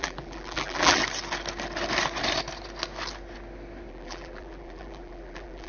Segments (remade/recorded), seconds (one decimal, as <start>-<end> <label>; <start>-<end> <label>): 0.0-1.0 remade; 1.0-3.9 recorded; 3.9-5.7 remade